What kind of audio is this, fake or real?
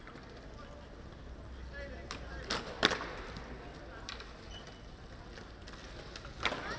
real